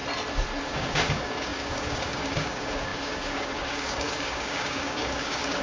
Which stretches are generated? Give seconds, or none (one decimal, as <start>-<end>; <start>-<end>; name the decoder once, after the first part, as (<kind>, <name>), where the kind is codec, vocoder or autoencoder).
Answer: 0.6-5.6 (codec, DAC)